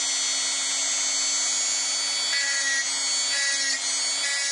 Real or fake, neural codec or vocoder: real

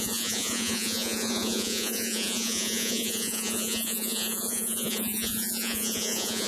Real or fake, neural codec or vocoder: fake, vocoder, Vocos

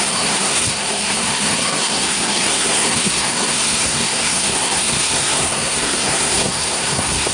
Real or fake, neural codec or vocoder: fake, codec, SNAC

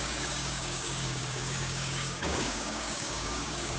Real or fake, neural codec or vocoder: fake, codec, DAC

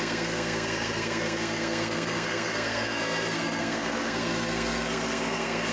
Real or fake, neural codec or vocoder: fake, codec, SNAC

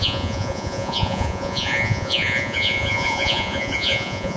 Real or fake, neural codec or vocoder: fake, vocoder, Vocos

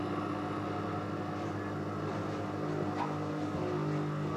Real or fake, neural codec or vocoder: real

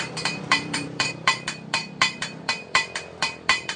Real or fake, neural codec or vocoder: fake, vocoder, BigVGAN v2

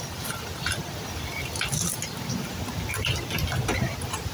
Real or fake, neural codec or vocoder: fake, vocoder, BigVGAN v2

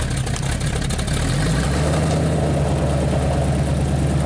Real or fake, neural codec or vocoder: real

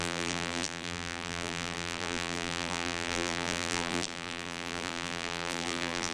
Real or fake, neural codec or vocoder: fake, vocoder, BigVGAN v2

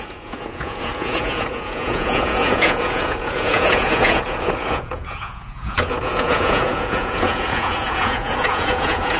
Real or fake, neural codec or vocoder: fake, vocoder, Vocos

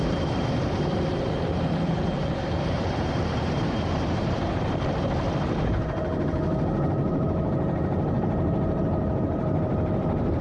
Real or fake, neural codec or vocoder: fake, vocoder, BigVGAN v2